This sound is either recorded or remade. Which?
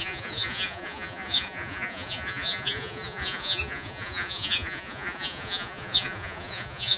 remade